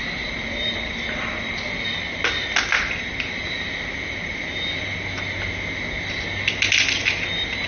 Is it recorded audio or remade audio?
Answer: recorded